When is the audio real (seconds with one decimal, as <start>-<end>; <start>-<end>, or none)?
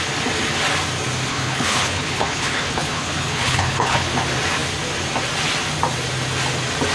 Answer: 0.0-1.3; 4.1-6.9